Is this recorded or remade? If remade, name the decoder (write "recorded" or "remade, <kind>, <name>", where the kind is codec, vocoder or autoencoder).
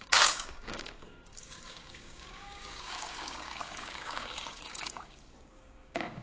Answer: remade, codec, DAC